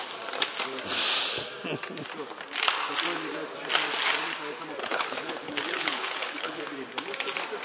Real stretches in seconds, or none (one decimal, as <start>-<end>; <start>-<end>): 0.0-4.8; 6.6-7.6